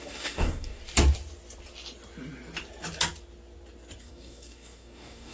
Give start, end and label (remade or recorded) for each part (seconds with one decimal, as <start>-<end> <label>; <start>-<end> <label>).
0.0-0.8 remade; 0.8-4.0 recorded; 4.0-5.3 remade